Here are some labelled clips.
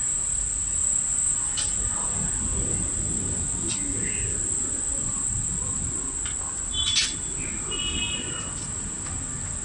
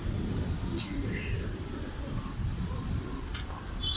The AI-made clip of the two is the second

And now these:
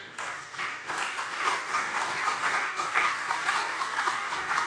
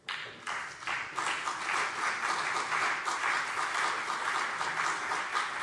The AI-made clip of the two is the first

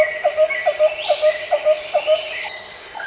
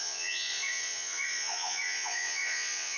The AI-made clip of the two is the second